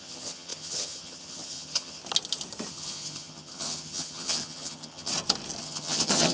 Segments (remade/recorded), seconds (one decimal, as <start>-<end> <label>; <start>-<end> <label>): 0.0-2.0 remade; 2.0-2.7 recorded; 2.7-5.1 remade; 5.1-5.6 recorded; 5.6-6.3 remade